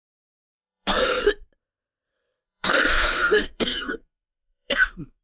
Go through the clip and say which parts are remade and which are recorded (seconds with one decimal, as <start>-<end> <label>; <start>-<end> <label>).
0.0-1.2 remade; 1.2-2.1 recorded; 2.1-5.2 remade